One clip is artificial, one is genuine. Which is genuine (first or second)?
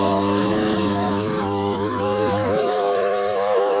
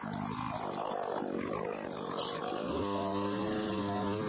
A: second